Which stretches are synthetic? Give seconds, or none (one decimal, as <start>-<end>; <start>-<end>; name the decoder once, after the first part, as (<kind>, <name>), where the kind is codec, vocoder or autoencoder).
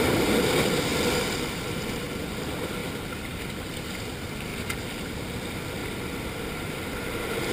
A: 2.8-3.4 (vocoder, BigVGAN v2); 5.8-6.7